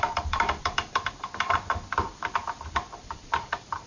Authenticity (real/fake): fake